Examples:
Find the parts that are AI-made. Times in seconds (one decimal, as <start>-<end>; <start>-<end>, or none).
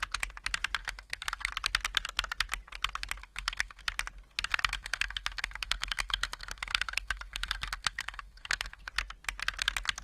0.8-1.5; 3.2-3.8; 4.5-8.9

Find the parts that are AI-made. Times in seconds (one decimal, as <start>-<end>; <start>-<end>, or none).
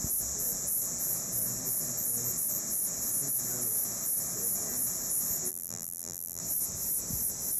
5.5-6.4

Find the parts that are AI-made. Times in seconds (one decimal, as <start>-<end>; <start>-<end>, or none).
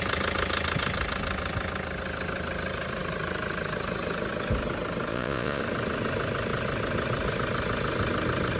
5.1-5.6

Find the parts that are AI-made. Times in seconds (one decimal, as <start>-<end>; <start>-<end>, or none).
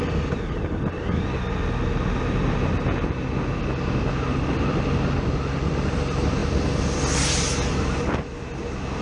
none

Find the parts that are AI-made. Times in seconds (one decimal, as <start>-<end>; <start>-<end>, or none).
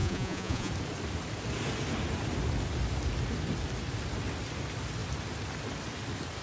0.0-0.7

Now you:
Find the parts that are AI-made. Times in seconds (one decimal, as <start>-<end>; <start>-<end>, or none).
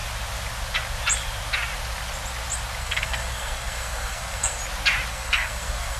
2.8-4.6; 5.1-6.0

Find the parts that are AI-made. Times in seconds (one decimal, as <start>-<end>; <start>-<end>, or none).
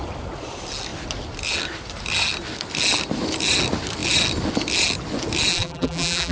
5.5-6.3